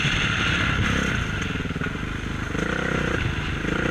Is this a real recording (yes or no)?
yes